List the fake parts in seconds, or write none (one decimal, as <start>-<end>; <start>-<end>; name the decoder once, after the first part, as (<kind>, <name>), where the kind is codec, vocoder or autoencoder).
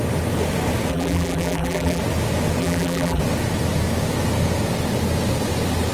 0.9-2.0 (vocoder, BigVGAN v2); 2.6-3.2